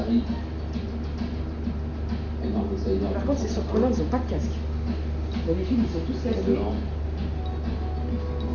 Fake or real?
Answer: real